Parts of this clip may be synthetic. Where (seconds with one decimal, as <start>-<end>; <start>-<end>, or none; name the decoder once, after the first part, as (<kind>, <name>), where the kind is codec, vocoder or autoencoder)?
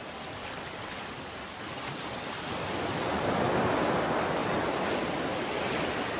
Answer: none